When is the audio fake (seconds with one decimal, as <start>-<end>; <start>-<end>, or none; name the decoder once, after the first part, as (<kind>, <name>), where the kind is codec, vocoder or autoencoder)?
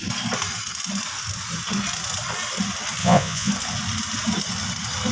3.0-3.5 (vocoder, Vocos)